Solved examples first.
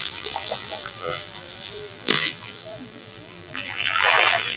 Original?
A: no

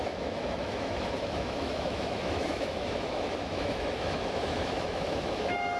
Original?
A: no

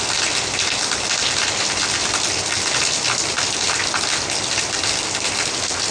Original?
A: no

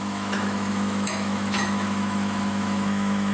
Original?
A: no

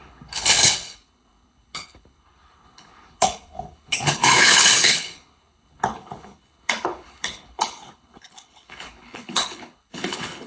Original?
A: no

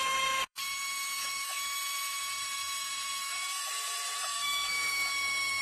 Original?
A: no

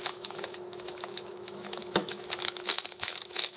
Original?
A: no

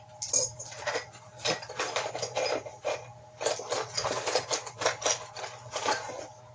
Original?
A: yes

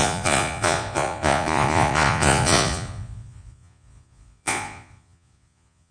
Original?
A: no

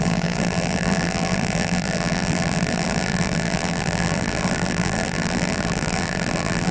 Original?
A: no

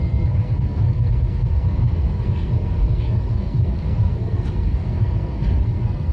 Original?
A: no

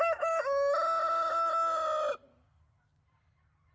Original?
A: yes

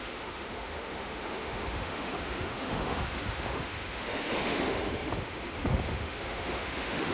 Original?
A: no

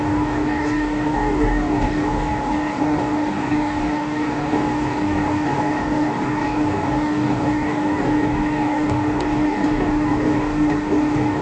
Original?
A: no